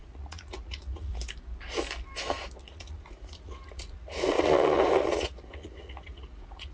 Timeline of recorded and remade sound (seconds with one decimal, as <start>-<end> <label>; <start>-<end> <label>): 0.0-1.1 remade; 1.1-2.6 recorded; 2.6-6.7 remade